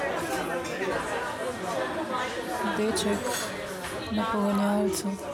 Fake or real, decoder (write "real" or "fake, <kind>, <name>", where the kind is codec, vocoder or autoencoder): real